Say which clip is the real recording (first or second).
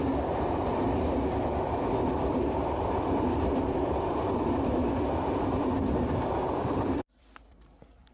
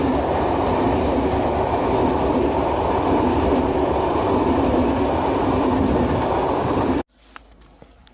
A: second